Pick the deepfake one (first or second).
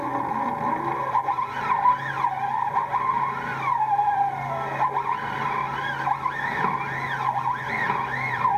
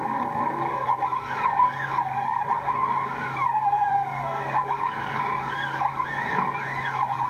second